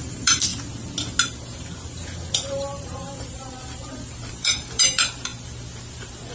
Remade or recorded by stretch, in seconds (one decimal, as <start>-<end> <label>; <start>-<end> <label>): 0.0-0.5 remade; 0.5-2.3 recorded; 2.3-5.3 remade; 5.3-6.3 recorded